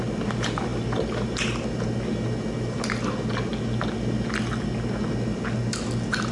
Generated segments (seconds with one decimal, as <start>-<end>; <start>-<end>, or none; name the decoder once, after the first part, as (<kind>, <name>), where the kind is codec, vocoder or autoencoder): none